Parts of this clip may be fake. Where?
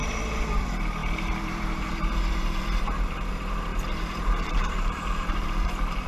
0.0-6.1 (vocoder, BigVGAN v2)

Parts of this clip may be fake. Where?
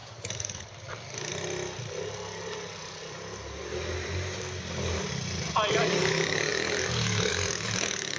0.0-1.3 (codec, DAC); 5.8-8.2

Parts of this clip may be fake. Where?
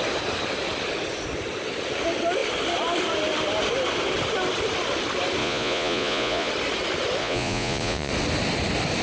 5.4-6.5 (vocoder, Vocos); 7.2-8.1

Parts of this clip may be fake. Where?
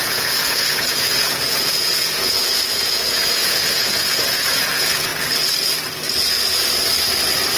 0.0-5.1 (vocoder, Vocos)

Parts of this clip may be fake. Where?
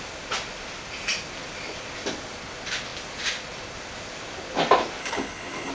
5.0-5.7 (codec, HILCodec)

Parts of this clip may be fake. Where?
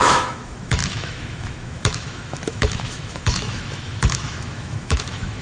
0.0-5.4 (autoencoder, DAC-VAE)